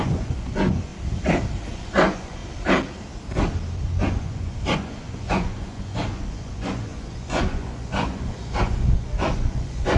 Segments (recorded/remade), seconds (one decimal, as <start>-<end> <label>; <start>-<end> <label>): 0.0-0.9 remade; 0.9-1.7 recorded; 1.7-2.4 remade; 2.4-4.0 recorded; 4.0-10.0 remade